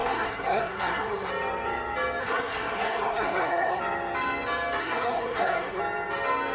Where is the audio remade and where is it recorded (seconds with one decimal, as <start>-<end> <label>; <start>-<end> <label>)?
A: 0.0-1.3 remade; 1.3-2.2 recorded; 2.2-3.8 remade; 3.8-4.8 recorded; 4.8-5.8 remade; 5.8-6.5 recorded